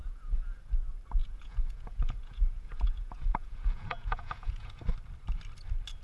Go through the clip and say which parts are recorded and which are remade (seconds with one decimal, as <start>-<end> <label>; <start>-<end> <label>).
0.0-0.6 remade; 0.6-1.2 recorded; 1.2-4.8 remade; 4.8-6.0 recorded

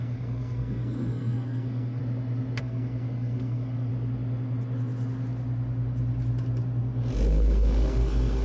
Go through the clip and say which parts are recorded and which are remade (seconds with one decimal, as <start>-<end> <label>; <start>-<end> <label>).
0.0-2.0 remade; 2.0-2.6 recorded; 2.6-3.9 remade; 3.9-7.3 recorded; 7.3-8.4 remade